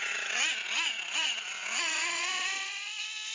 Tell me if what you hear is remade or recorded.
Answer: remade